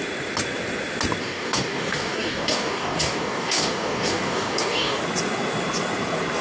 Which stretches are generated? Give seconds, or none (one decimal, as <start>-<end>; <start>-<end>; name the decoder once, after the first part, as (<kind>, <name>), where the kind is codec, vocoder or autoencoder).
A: 1.2-5.0 (codec, DAC)